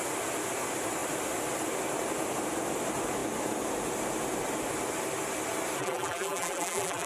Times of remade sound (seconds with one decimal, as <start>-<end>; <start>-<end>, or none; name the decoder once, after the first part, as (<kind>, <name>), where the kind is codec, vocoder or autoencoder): 5.8-7.1 (vocoder, BigVGAN v2)